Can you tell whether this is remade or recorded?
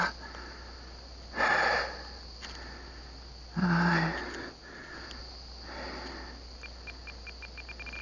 recorded